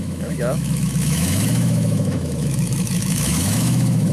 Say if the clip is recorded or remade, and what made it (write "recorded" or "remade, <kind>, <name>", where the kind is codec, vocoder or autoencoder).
remade, autoencoder, DAC-VAE